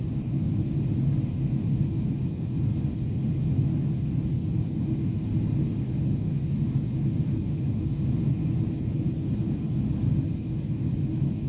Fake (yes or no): no